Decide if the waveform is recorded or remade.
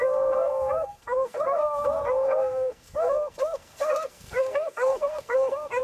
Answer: remade